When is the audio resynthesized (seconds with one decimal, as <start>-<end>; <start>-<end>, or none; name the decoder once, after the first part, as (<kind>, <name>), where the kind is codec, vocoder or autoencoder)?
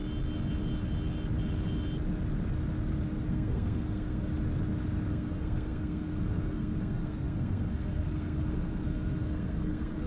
3.3-4.3 (codec, SNAC); 5.1-10.1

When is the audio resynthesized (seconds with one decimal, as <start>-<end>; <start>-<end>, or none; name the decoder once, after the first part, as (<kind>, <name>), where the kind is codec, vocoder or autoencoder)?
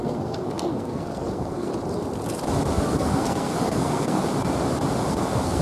0.0-1.7 (codec, SNAC); 2.7-4.2; 5.1-5.6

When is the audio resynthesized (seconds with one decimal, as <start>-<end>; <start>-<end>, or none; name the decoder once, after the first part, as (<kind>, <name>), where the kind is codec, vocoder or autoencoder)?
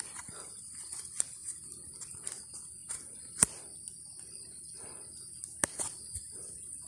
none